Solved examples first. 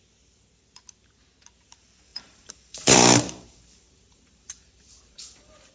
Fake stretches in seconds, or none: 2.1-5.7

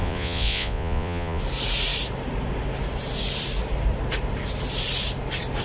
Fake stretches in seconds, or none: 0.0-1.4

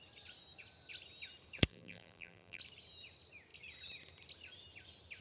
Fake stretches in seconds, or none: 1.7-2.6